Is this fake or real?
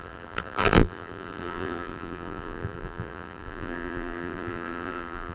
fake